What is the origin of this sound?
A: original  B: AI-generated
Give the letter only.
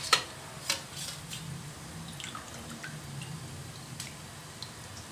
A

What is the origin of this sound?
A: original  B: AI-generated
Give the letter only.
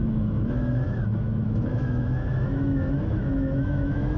B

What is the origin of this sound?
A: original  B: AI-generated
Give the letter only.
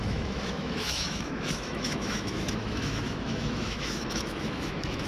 B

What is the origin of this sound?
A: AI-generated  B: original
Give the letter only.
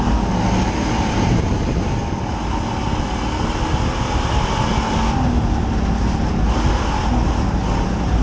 B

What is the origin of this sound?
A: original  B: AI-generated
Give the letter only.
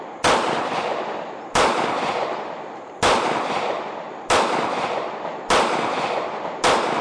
A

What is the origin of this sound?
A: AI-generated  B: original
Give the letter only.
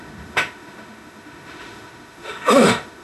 A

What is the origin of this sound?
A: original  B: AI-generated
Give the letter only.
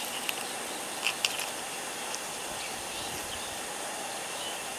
A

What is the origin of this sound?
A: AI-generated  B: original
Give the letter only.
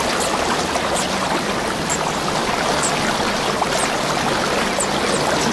B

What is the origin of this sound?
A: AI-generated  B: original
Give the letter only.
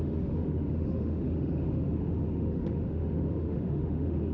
A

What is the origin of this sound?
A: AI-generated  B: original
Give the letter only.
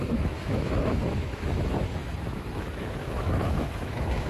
A